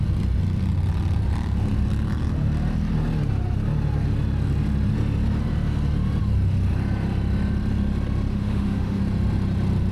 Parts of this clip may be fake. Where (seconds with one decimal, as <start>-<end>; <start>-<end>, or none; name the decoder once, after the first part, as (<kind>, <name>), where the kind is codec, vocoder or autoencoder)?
8.3-9.0 (autoencoder, DAC-VAE)